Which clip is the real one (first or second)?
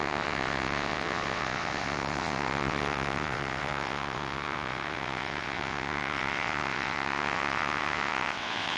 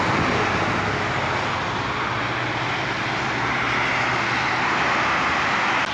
second